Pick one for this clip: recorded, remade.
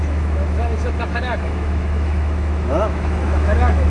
remade